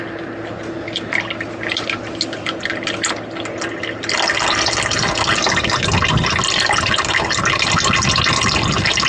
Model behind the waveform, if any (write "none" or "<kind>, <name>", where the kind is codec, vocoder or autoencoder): none